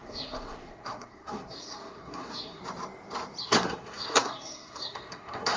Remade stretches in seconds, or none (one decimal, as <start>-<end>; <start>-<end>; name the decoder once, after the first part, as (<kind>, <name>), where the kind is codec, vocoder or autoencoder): 0.0-2.6 (codec, SNAC); 3.4-5.6